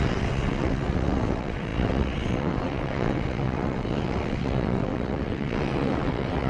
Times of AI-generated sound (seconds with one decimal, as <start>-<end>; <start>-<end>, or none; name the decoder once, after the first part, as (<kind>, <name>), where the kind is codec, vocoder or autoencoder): 0.0-6.5 (vocoder, WaveNeXt)